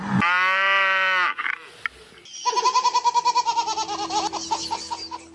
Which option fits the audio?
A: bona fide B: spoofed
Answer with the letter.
A